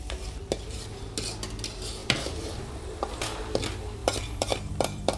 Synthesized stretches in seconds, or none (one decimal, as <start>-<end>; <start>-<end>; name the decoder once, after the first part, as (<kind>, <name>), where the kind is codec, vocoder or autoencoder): 2.0-3.0 (vocoder, BigVGAN v2); 4.0-5.2